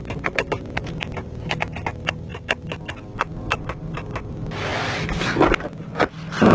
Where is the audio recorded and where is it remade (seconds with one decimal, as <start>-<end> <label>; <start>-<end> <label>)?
0.0-6.5 recorded